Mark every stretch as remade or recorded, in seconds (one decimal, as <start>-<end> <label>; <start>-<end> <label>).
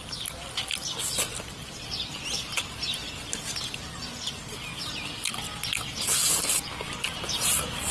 0.0-7.9 recorded